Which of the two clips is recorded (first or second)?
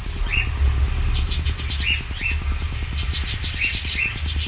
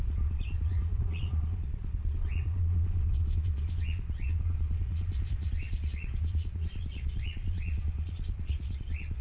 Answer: first